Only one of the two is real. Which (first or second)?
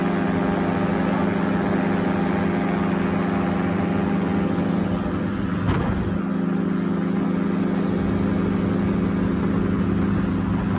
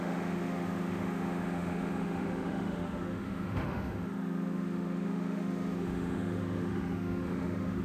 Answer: first